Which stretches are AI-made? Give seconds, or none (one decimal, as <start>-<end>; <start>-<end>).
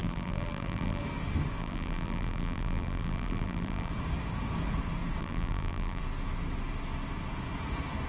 0.0-1.0; 1.6-3.9; 5.2-6.0